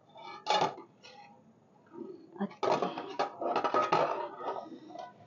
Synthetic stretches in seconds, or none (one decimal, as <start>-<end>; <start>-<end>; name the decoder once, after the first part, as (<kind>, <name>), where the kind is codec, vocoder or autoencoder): none